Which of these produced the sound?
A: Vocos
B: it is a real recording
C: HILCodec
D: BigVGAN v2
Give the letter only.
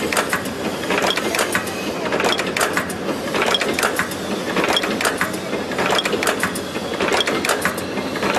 B